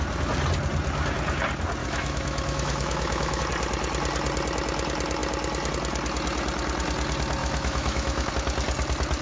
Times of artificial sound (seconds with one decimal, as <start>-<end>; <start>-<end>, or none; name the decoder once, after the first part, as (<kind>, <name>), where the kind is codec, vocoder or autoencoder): 1.8-3.4 (autoencoder, DAC-VAE); 7.4-8.3